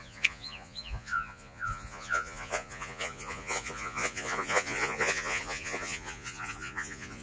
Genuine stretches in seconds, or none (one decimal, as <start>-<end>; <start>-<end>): none